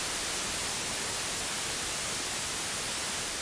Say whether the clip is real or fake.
real